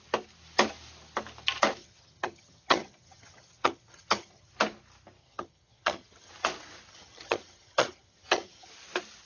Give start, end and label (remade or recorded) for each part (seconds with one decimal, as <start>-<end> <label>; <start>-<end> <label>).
0.0-1.8 recorded; 1.8-4.5 remade; 4.5-5.2 recorded; 5.2-6.3 remade; 6.3-6.9 recorded; 6.9-8.7 remade; 8.7-9.3 recorded